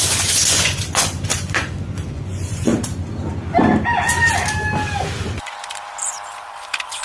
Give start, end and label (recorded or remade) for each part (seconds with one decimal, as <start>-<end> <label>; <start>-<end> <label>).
0.0-2.7 remade; 2.7-7.0 recorded